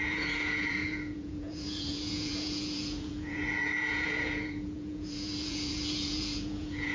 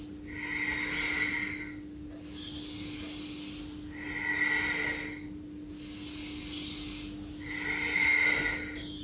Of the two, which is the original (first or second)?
second